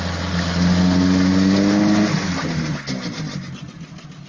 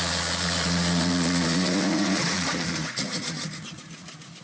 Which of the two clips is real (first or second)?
first